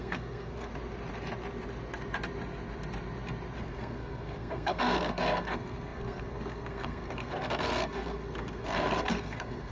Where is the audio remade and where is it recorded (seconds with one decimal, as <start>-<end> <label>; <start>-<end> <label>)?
0.0-0.7 remade; 0.7-3.6 recorded; 3.6-9.7 remade